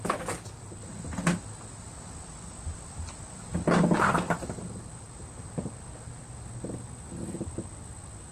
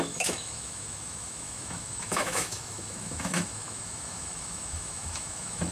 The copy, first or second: second